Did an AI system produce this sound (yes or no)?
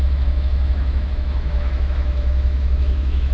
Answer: yes